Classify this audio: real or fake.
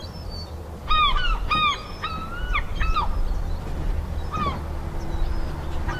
real